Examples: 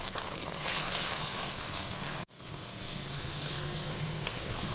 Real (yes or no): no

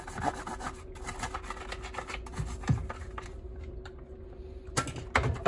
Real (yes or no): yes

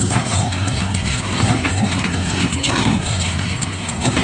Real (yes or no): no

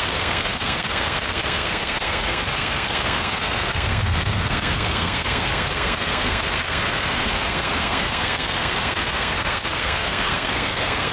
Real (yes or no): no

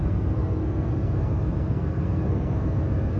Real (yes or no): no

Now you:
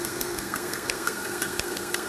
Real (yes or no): no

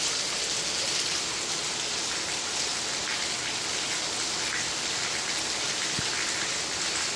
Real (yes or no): yes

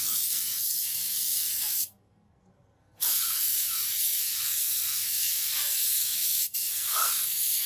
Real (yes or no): no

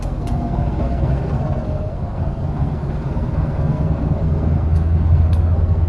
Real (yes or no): no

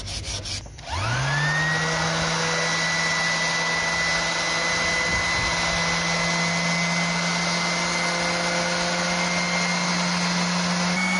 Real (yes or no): yes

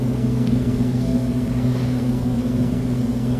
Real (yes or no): no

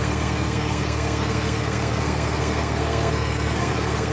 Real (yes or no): no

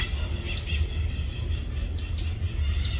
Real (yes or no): yes